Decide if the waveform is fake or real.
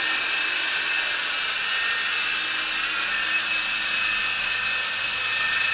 real